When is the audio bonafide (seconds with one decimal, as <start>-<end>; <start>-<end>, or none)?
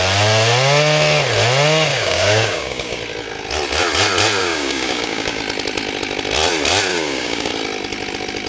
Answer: 0.0-1.9; 3.0-4.4; 5.4-6.9; 7.5-8.5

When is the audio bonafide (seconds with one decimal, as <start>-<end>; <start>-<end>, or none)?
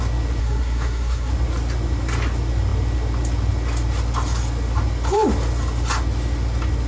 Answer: 0.0-0.4; 1.3-6.9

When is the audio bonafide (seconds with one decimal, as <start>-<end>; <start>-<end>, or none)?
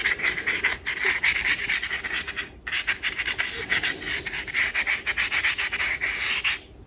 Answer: 0.0-6.9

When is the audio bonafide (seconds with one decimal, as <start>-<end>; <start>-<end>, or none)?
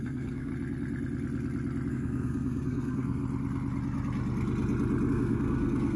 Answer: 0.5-1.9; 3.2-5.1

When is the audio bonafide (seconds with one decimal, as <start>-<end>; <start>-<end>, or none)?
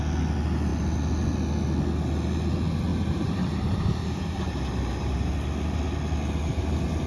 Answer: 0.0-2.9; 5.3-7.1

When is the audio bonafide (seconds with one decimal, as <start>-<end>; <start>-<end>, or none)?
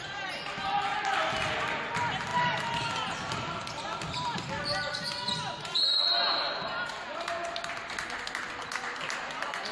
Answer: 0.0-9.7